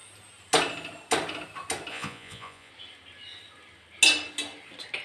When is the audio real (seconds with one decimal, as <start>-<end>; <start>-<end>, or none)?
0.0-1.9; 2.7-5.0